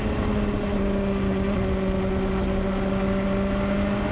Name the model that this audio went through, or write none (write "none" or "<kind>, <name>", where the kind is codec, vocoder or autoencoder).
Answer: none